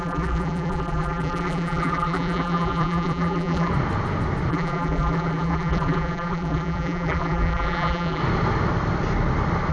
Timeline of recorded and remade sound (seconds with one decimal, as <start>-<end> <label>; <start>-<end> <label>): 0.0-3.7 remade; 3.7-4.5 recorded; 4.5-8.2 remade; 8.2-9.7 recorded